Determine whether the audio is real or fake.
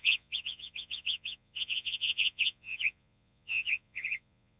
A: fake